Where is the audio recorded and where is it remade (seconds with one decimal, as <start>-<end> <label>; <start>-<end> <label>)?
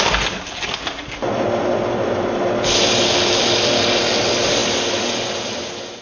0.0-6.0 recorded